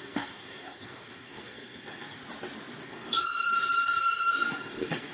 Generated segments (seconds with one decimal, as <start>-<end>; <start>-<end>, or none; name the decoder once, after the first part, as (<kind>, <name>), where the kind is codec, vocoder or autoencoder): 0.0-2.2 (codec, SNAC); 2.8-3.5; 4.0-5.1